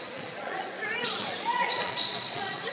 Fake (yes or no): yes